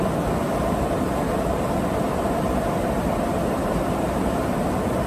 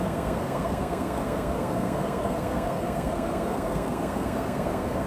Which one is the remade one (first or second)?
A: second